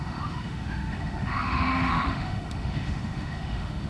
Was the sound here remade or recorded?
remade